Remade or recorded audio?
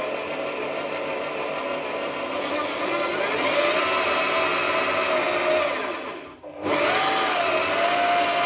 recorded